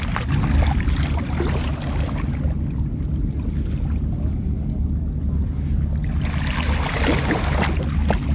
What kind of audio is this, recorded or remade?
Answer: recorded